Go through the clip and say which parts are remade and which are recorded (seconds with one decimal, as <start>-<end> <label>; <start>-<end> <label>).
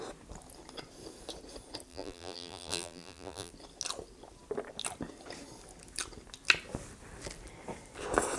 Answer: 0.0-1.9 recorded; 1.9-3.5 remade; 3.5-8.4 recorded